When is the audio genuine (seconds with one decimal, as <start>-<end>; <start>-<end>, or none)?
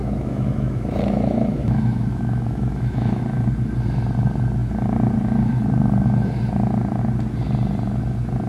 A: 3.2-8.5